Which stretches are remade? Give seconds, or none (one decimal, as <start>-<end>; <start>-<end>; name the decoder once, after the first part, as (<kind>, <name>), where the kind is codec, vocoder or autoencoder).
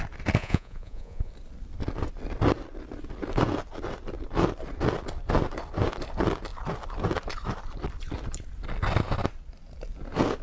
0.4-1.3 (vocoder, Vocos)